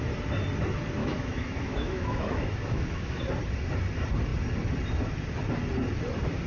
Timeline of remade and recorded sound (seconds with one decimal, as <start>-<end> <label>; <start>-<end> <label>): 0.0-1.0 recorded; 1.0-3.2 remade; 3.2-6.5 recorded